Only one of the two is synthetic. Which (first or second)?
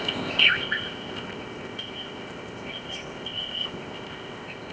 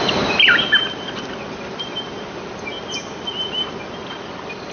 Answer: first